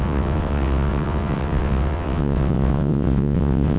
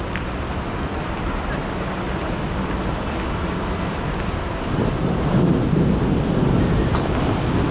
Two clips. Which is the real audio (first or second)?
second